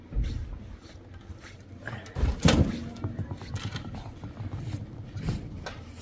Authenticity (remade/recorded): recorded